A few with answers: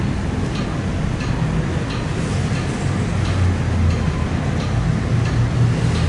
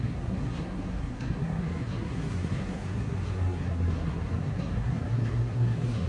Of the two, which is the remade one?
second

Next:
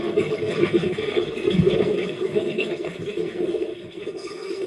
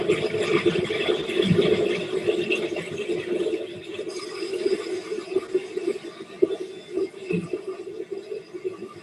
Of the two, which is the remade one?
first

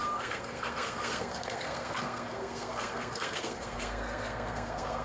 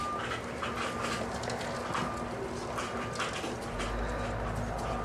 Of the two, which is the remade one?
first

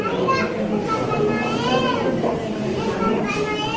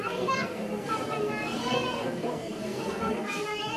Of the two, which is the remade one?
second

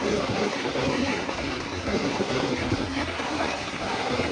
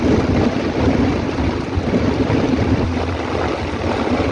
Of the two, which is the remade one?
first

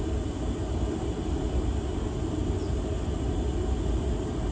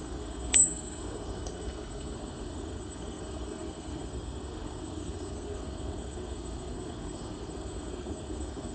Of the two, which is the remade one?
second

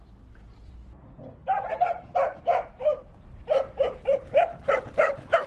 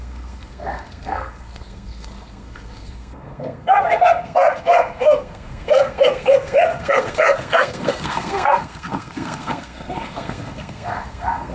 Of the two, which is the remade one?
second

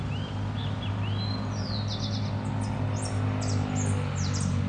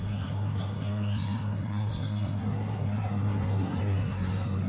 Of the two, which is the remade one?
second